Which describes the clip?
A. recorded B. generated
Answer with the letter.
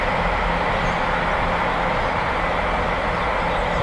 A